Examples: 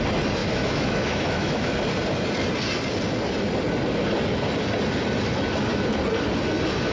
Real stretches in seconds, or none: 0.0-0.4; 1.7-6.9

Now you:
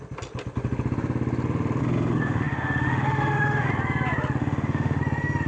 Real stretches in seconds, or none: 0.0-1.8; 3.7-4.4; 5.0-5.5

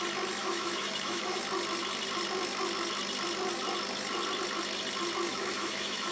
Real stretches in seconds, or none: 0.0-0.4; 1.4-5.3

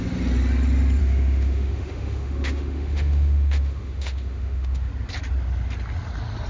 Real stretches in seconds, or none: 0.0-1.0; 4.9-6.5